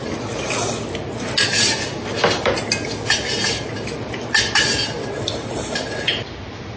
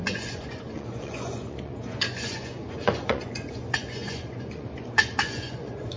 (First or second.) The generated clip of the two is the second